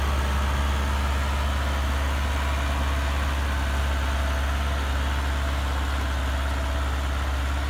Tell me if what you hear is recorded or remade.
recorded